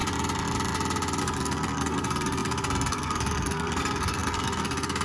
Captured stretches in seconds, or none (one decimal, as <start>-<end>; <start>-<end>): 0.0-1.2